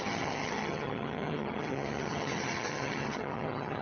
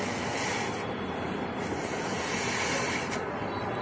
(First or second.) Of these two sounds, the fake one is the first